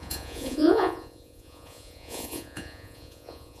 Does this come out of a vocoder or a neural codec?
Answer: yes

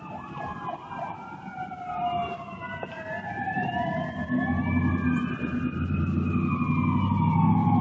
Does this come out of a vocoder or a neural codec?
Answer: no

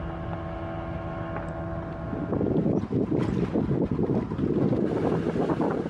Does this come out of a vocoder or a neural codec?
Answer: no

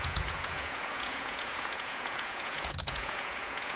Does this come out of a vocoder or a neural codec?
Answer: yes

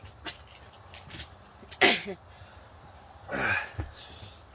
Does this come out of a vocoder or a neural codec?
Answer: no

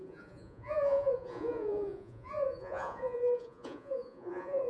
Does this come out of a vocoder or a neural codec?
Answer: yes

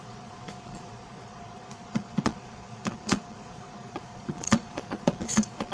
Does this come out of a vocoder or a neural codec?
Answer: yes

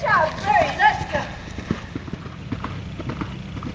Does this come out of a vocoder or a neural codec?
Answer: no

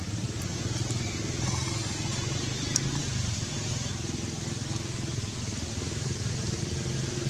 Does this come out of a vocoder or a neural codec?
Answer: no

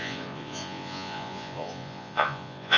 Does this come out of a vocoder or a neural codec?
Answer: yes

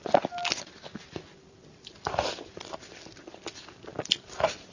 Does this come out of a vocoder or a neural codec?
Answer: no